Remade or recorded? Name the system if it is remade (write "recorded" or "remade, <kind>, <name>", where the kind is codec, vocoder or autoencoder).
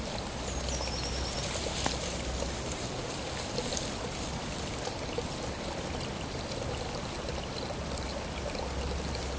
recorded